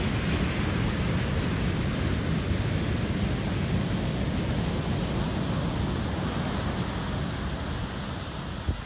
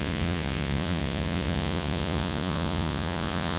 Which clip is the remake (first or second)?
second